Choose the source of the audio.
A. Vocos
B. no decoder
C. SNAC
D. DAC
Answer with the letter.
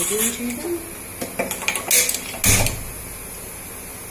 B